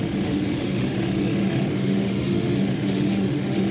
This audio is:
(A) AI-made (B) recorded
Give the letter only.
A